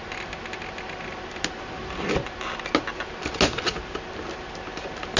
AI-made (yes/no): no